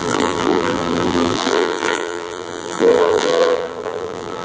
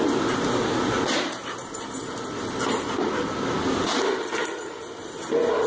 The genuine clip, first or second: second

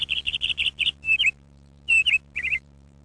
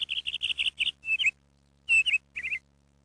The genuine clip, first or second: second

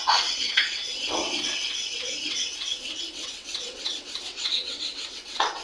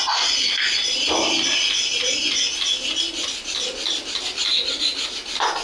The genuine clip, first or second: second